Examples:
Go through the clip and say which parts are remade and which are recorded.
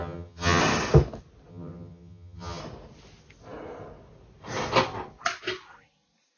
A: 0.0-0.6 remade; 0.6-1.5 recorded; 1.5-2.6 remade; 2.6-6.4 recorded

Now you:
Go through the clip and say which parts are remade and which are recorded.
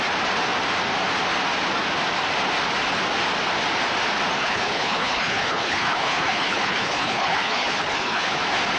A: 0.0-4.4 recorded; 4.4-8.4 remade; 8.4-8.8 recorded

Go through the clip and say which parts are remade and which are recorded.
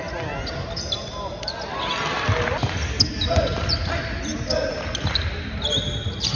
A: 0.0-6.4 recorded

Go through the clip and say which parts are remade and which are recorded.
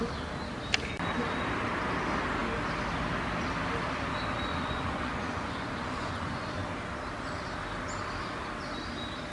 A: 0.0-4.5 recorded; 4.5-6.5 remade; 6.5-9.3 recorded